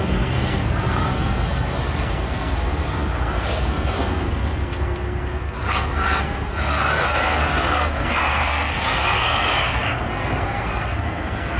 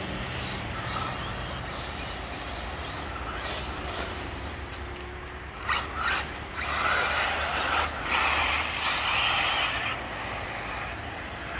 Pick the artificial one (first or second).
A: first